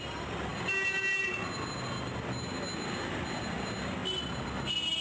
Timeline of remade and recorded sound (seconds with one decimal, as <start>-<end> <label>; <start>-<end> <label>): 0.0-5.0 recorded